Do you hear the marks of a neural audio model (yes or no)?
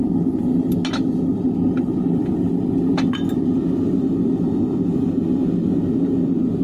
no